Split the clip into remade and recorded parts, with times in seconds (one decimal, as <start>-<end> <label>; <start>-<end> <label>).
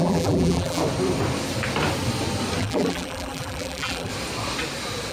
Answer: 0.0-0.8 remade; 0.8-2.6 recorded; 2.6-4.1 remade; 4.1-5.1 recorded